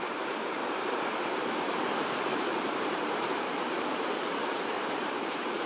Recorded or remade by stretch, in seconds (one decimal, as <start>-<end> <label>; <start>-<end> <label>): 0.0-5.7 remade